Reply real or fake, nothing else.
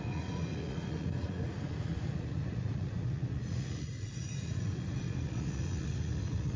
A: fake